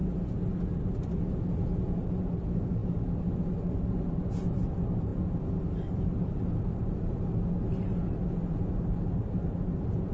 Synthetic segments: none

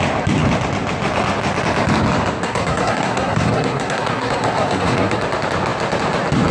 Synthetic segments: 2.4-5.2 (codec, SNAC)

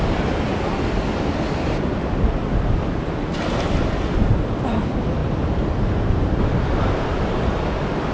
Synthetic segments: 1.9-2.8 (vocoder, BigVGAN v2); 5.2-5.7

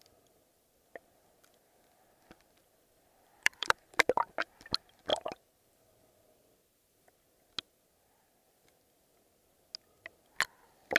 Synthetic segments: 2.6-4.2 (vocoder, BigVGAN v2); 5.1-6.1

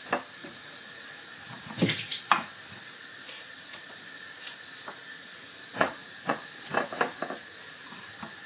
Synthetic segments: 0.4-1.6 (vocoder, Vocos); 2.9-4.3; 5.1-6.7

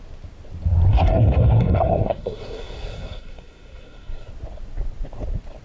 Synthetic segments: 0.9-4.3 (codec, SNAC)

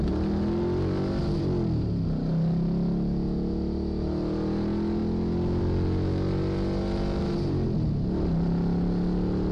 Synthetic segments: none

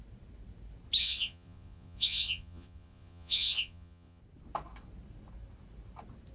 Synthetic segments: 1.0-4.2 (vocoder, Vocos)